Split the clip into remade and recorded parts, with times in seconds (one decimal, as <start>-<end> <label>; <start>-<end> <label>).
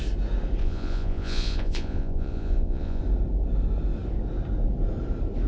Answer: 0.0-0.6 recorded; 0.6-3.0 remade; 3.0-5.5 recorded